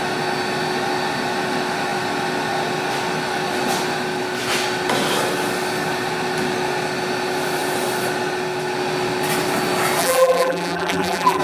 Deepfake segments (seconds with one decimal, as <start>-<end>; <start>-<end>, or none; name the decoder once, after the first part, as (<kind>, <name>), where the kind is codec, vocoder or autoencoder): 10.0-11.4 (vocoder, BigVGAN v2)